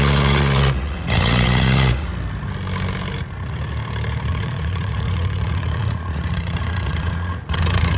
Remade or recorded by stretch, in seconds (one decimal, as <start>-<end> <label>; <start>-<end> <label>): 0.0-2.1 remade; 2.1-4.3 recorded; 4.3-8.0 remade